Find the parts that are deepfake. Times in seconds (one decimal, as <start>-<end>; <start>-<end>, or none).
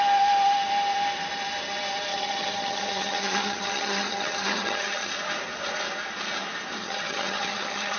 2.1-5.1; 6.8-8.0